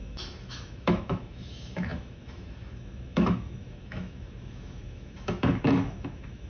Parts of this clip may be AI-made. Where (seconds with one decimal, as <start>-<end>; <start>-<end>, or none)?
0.0-6.5